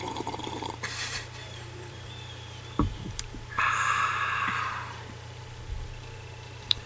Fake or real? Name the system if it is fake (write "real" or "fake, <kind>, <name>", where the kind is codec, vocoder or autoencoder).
fake, vocoder, BigVGAN v2